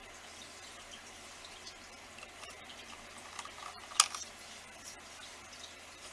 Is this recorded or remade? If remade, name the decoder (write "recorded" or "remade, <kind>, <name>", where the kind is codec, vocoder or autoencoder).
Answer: recorded